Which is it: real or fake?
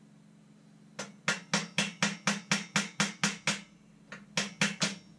real